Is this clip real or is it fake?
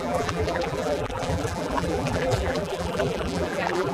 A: fake